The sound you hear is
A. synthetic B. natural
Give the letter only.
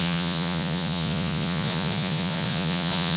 A